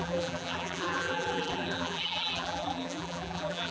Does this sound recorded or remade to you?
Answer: remade